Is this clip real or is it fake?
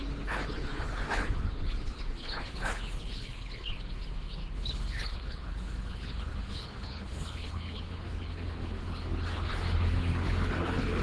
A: fake